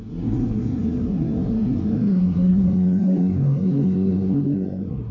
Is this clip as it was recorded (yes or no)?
no